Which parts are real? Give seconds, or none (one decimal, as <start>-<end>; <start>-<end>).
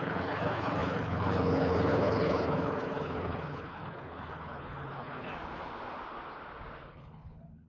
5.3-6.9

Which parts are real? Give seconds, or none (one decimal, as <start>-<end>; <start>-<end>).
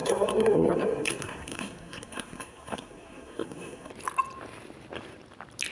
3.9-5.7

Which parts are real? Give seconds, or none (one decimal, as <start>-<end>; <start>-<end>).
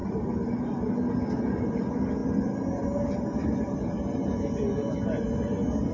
0.0-5.9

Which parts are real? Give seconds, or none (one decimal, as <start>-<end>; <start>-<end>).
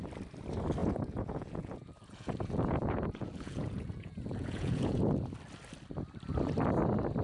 0.0-0.8; 5.1-7.2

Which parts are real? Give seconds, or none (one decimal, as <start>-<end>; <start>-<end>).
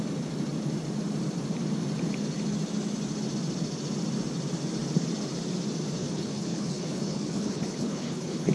0.0-6.0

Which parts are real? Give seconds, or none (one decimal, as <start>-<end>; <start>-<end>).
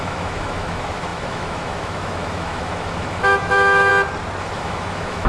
3.9-4.4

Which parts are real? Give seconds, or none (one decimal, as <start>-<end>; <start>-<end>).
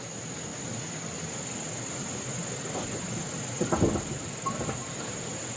0.0-5.6